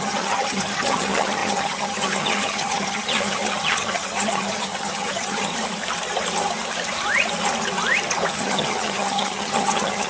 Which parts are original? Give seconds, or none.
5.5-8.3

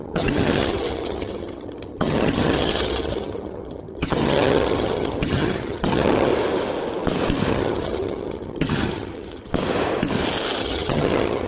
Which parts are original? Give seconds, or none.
6.3-7.5; 9.5-10.6

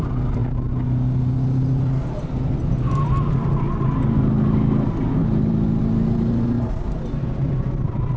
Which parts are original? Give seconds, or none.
0.0-8.2

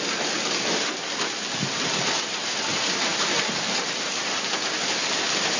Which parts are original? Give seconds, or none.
0.0-5.6

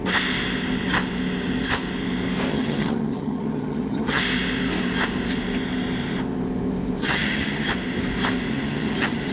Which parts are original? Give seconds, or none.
0.0-2.5; 4.2-7.0; 7.7-8.5

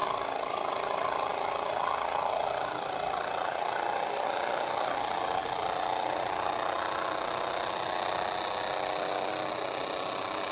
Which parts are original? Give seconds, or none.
0.0-10.5

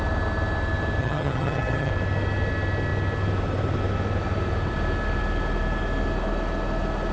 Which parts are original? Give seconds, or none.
0.0-1.0; 1.9-7.1